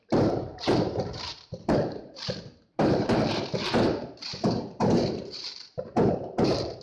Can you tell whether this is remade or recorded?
remade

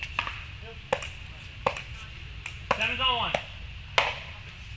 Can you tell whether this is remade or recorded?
recorded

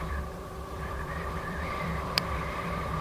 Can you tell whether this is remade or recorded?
remade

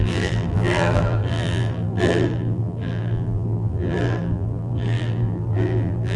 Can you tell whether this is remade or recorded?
remade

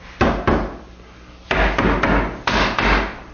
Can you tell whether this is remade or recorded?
recorded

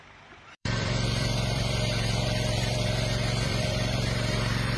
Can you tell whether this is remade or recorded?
remade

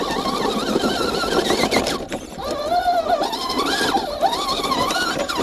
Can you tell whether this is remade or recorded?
remade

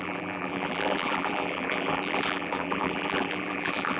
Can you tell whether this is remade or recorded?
remade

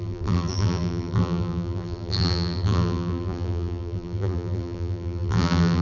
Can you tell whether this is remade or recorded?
remade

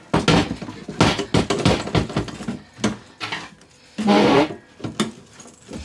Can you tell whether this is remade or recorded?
recorded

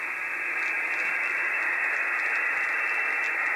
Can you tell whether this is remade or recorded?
recorded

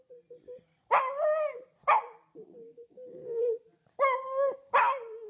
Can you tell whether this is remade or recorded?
recorded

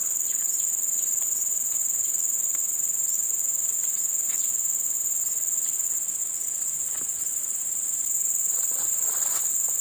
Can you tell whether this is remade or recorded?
remade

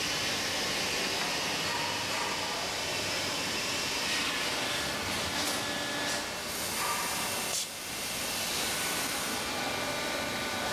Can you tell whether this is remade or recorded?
recorded